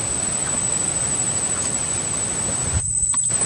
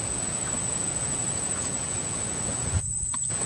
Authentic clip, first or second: first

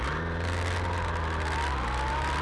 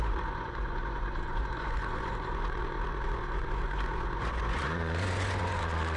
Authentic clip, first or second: first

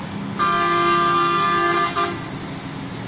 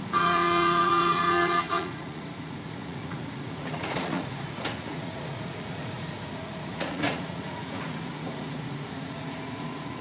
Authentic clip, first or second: first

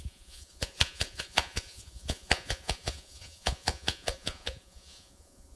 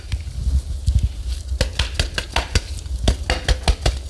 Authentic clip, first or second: second